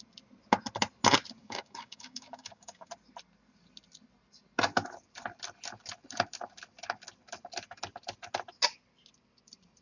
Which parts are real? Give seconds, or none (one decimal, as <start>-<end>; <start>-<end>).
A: 0.0-1.4; 2.9-9.8